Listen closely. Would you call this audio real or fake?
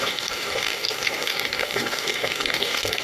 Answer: fake